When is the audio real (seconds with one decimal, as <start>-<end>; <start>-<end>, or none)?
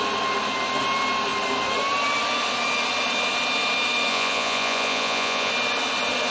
0.0-4.1; 5.5-6.3